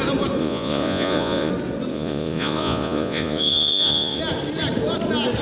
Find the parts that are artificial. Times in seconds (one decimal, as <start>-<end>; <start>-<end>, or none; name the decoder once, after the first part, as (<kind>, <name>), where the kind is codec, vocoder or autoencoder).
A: 0.4-1.5 (vocoder, Vocos); 1.9-4.2